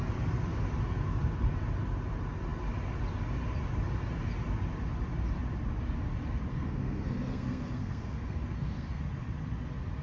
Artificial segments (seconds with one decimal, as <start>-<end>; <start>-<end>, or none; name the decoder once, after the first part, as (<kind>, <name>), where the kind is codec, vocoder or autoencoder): 6.5-9.0 (codec, SNAC)